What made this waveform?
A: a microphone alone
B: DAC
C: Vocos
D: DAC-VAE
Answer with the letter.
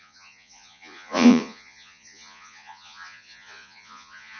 C